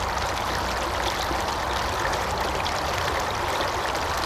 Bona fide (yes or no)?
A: yes